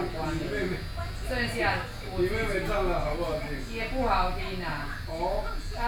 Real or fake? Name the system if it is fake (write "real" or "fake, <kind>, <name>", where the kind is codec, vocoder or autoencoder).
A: real